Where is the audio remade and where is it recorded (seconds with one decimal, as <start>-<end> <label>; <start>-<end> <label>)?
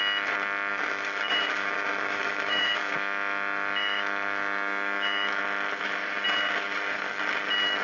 0.0-0.7 recorded; 0.7-5.4 remade; 5.4-7.8 recorded